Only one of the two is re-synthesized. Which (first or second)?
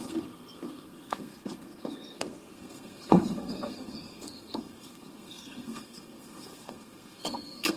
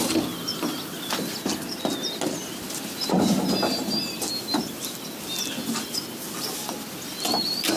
first